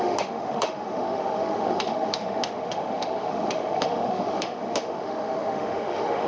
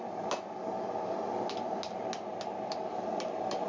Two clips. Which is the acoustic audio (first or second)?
second